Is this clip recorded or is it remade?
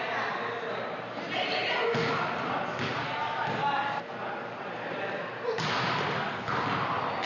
recorded